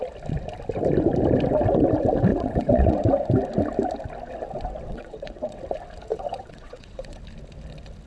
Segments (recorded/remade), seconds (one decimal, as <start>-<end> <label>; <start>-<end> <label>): 0.0-2.3 recorded; 2.3-3.0 remade; 3.0-4.9 recorded; 4.9-5.6 remade; 5.6-6.1 recorded; 6.1-7.2 remade; 7.2-8.1 recorded